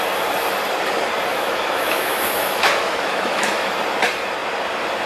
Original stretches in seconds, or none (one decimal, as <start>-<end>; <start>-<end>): 0.0-1.3; 3.7-5.1